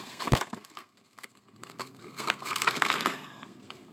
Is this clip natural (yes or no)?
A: no